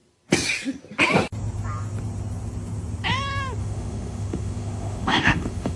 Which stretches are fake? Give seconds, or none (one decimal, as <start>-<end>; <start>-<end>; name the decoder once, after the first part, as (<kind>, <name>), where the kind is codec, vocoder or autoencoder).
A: 3.6-5.8 (autoencoder, DAC-VAE)